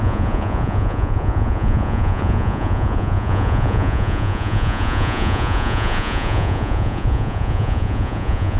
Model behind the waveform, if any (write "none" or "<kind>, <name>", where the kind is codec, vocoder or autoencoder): vocoder, Vocos